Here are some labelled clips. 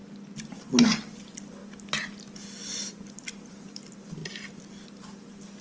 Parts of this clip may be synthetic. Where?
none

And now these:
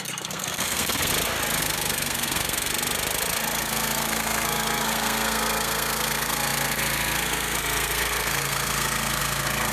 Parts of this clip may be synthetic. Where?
0.0-1.1 (codec, SNAC); 1.6-2.7; 3.6-9.7

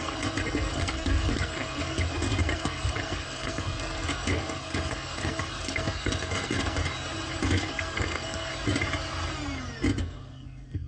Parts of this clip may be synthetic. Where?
0.0-6.8 (codec, SNAC); 7.4-8.5; 10.0-10.9

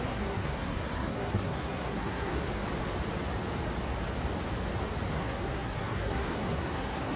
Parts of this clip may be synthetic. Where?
0.0-2.4 (codec, SNAC); 5.1-7.2

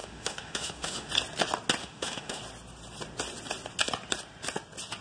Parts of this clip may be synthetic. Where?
0.0-1.1 (autoencoder, DAC-VAE); 1.8-2.4

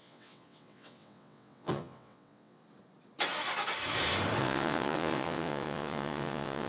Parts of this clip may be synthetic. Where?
0.0-2.6 (vocoder, WaveNeXt); 4.4-6.7